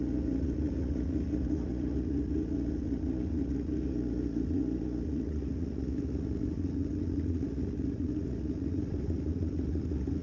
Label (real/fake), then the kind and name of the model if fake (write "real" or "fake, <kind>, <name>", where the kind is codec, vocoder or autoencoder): fake, vocoder, Vocos